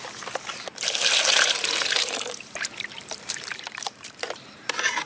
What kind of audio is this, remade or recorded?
remade